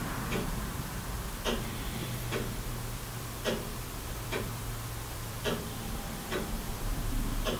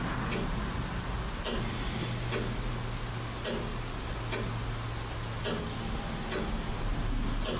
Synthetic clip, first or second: first